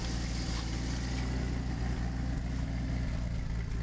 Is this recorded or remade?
recorded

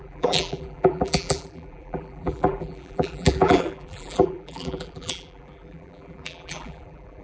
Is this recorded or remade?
remade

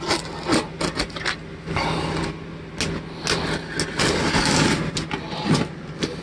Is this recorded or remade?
recorded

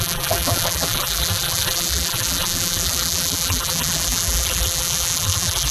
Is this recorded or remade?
remade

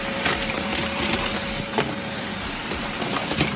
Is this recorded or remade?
remade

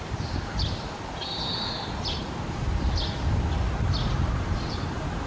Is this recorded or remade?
recorded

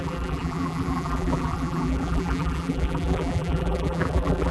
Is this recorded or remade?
remade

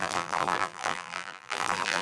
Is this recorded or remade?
remade